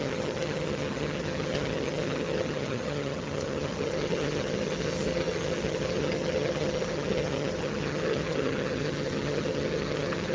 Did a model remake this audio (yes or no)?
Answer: yes